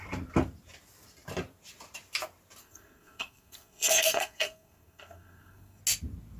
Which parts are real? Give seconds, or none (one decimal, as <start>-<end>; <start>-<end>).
0.0-2.6; 5.8-6.4